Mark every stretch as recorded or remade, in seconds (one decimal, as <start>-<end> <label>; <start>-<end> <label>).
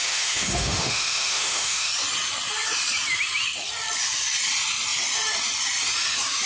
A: 0.0-1.9 remade; 1.9-6.5 recorded